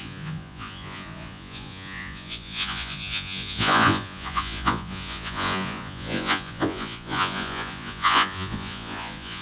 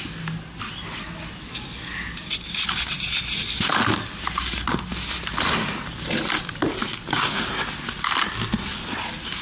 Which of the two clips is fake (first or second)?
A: first